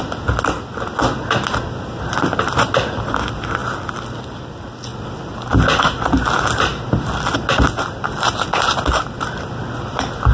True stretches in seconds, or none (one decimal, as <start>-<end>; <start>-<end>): 0.0-10.3

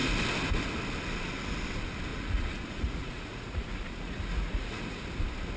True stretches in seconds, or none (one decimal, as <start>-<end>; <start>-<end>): 0.0-2.1; 5.0-5.6

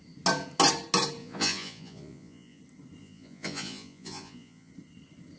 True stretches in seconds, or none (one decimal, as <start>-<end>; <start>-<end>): 0.0-1.2; 2.6-3.0; 4.7-5.4